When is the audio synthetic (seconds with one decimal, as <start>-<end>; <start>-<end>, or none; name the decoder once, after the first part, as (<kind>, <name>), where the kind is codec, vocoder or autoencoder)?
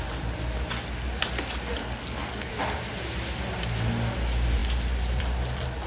1.8-2.5 (codec, SNAC)